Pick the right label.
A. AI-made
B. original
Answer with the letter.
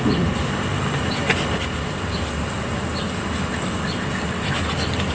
B